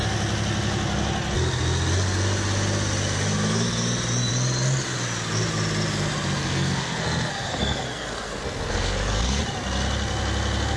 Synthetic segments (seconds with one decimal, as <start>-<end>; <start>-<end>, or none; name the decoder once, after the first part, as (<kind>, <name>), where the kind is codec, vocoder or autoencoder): 6.4-9.4 (codec, SNAC)